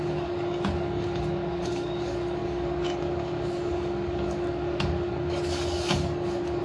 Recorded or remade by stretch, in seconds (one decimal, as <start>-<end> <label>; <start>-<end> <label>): 0.0-6.6 remade